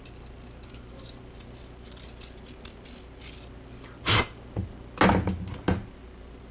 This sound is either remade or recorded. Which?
recorded